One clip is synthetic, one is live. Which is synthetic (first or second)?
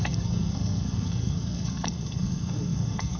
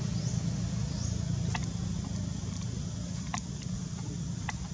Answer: first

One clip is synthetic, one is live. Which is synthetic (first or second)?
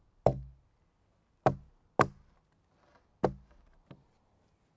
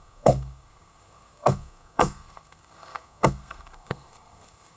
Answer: second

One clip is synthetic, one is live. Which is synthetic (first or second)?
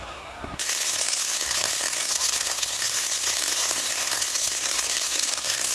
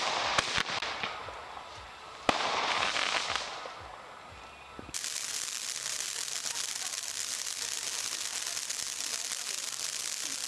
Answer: first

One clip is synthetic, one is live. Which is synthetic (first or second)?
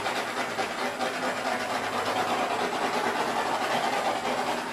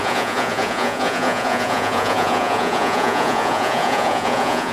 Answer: second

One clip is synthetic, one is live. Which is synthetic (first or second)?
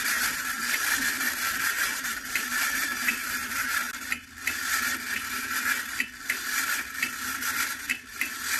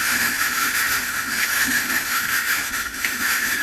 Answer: second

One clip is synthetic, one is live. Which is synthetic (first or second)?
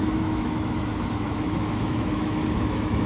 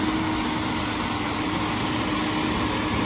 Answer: first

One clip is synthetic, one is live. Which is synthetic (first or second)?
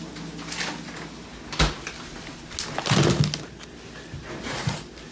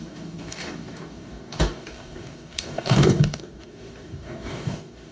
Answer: second